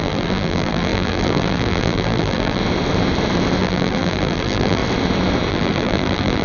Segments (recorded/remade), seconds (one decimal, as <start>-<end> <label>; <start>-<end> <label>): 0.0-2.6 remade; 2.6-3.6 recorded; 3.6-4.8 remade; 4.8-5.5 recorded; 5.5-6.4 remade